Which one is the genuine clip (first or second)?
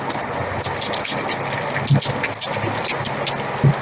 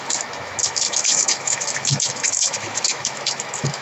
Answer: first